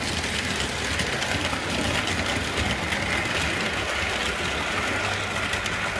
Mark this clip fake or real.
real